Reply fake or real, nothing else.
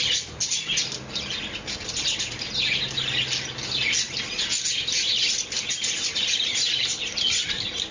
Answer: real